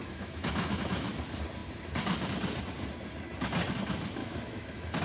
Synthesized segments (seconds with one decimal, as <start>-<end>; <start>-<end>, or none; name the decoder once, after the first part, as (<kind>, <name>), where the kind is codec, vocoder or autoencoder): 0.0-1.1 (autoencoder, DAC-VAE); 4.2-5.0